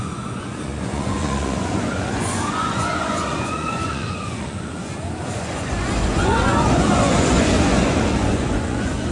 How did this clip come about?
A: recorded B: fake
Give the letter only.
B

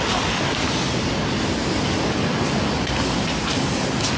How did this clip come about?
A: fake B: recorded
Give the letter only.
B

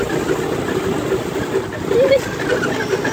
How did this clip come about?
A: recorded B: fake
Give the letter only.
A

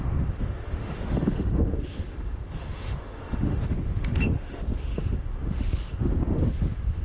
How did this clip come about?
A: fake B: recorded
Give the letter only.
A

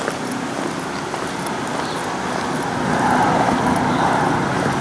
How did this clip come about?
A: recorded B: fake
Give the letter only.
A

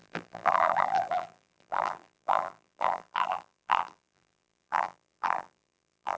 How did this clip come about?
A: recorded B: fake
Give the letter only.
B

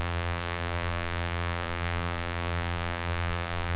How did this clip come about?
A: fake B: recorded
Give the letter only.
A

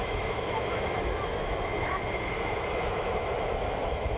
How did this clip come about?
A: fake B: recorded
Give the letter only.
A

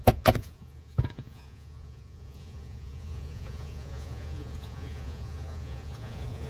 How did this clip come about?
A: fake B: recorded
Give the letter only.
A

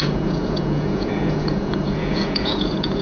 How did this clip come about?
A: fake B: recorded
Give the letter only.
A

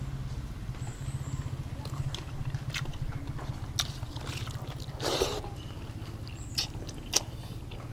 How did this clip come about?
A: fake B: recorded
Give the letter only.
B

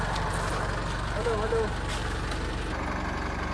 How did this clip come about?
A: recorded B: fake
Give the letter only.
A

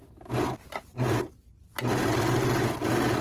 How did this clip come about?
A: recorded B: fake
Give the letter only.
A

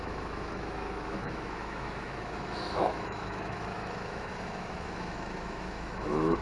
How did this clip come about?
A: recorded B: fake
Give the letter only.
B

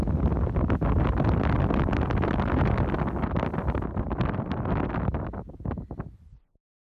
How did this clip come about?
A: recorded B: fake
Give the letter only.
A